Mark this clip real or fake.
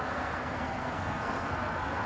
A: fake